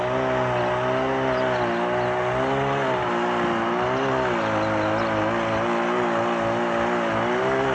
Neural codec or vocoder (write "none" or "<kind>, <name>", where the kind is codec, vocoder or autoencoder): none